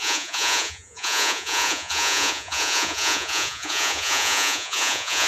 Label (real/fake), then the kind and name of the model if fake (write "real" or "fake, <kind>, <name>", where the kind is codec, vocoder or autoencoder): fake, vocoder, Vocos